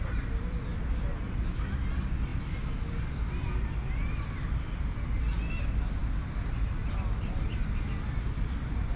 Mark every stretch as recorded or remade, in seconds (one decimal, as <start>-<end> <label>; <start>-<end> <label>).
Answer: 0.0-9.0 recorded